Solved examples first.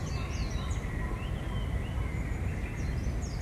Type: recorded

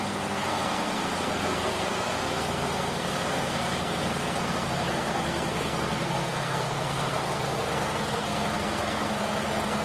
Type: remade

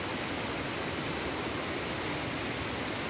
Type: recorded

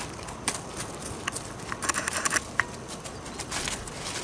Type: recorded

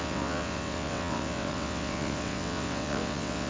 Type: remade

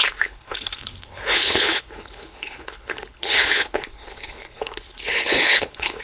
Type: remade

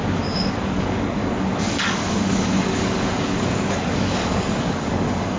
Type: remade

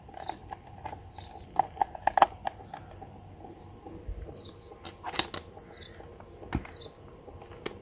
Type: recorded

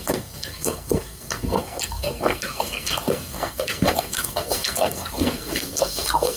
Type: remade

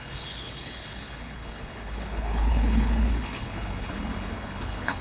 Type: remade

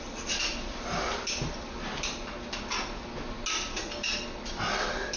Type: recorded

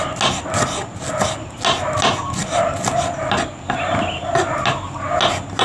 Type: recorded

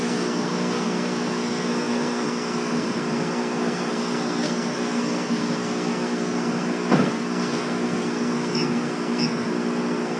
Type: remade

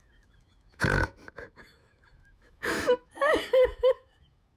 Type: remade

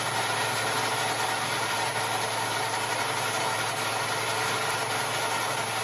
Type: recorded